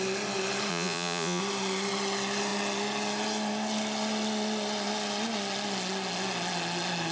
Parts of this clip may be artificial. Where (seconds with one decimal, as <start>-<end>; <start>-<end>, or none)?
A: 0.7-1.4